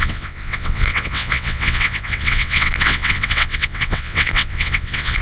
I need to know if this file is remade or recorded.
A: remade